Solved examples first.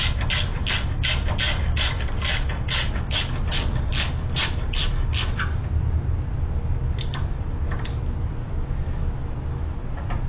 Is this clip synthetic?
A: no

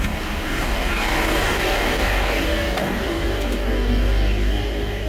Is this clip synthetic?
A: yes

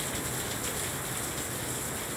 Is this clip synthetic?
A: no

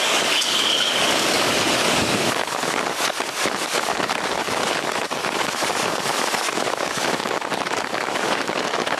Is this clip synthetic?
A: yes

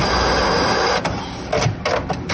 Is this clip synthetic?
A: no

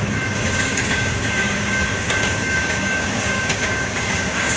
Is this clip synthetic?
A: yes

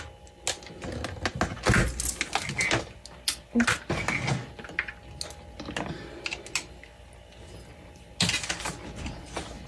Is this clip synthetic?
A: no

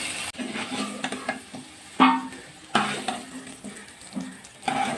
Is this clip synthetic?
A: no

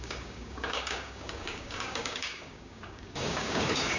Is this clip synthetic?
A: yes